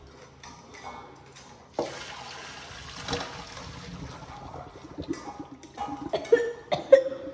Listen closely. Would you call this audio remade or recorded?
recorded